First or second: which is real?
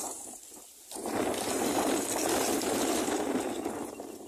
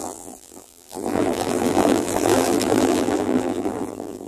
first